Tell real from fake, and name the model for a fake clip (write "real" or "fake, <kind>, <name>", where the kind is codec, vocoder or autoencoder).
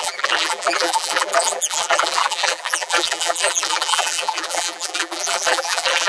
fake, vocoder, BigVGAN v2